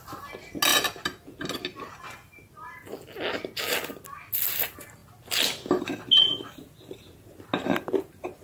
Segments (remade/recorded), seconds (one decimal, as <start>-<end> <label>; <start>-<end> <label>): 0.0-8.4 recorded